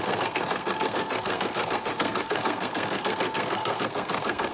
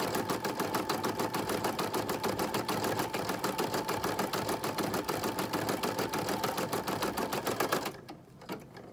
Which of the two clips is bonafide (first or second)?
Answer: second